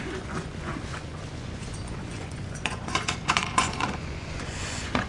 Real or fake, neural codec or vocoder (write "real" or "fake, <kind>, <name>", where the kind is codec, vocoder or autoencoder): fake, vocoder, Vocos